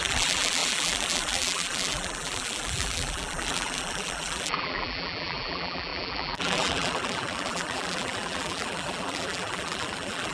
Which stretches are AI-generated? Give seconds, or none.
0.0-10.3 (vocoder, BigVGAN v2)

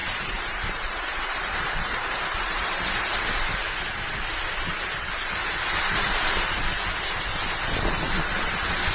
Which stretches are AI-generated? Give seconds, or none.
0.0-2.9 (vocoder, BigVGAN v2)

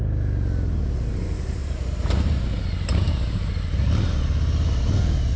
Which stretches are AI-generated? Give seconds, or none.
1.6-4.3 (vocoder, BigVGAN v2)

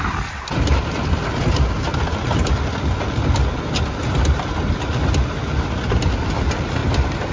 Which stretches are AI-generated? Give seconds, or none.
0.0-1.9 (vocoder, BigVGAN v2); 5.9-6.8